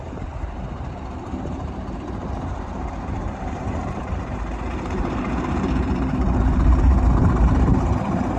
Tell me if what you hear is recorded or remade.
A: remade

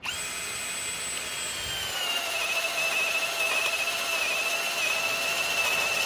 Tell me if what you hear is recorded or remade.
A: recorded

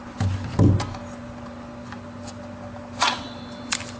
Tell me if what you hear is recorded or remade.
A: recorded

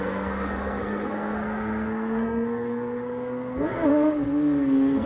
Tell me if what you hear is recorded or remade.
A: remade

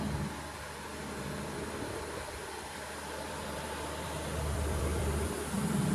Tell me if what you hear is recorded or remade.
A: remade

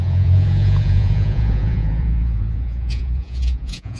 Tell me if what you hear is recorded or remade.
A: remade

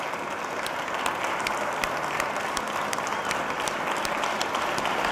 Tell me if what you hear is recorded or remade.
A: recorded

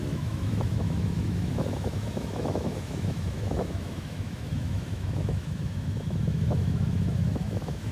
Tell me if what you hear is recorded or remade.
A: remade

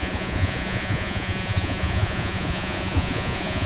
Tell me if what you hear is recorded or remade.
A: remade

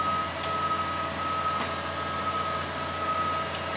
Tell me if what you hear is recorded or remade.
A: recorded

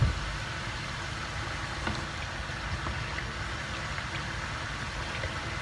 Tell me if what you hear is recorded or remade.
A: recorded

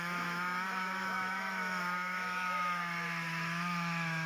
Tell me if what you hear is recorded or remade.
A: remade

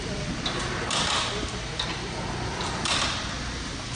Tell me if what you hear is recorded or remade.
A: recorded